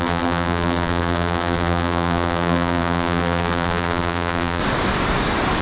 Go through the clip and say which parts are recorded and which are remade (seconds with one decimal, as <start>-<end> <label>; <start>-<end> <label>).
0.0-4.6 remade; 4.6-5.6 recorded